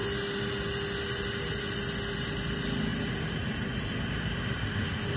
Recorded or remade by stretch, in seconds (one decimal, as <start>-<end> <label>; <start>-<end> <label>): 0.0-2.9 recorded; 2.9-3.9 remade; 3.9-5.2 recorded